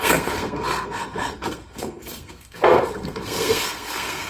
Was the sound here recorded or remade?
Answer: remade